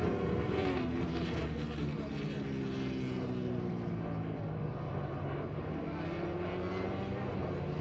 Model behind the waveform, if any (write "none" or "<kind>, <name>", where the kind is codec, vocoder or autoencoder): none